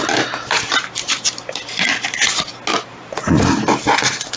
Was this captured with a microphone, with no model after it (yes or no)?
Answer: yes